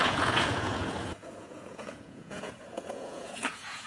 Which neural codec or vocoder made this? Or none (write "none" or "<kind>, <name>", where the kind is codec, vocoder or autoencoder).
vocoder, Vocos